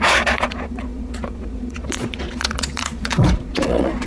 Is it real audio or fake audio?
fake